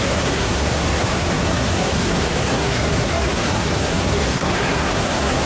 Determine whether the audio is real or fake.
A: fake